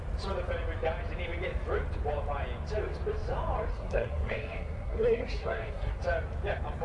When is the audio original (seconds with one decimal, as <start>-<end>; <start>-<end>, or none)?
0.0-3.7; 6.0-6.8